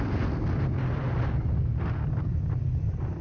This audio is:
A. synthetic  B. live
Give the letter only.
A